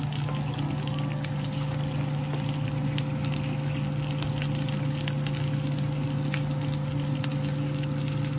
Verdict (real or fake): real